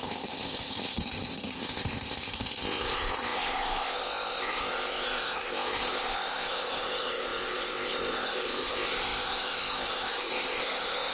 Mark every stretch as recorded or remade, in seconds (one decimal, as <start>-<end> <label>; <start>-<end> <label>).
0.0-11.1 remade